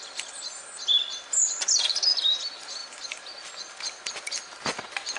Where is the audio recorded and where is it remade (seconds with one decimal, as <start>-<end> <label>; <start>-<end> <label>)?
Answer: 0.0-5.2 recorded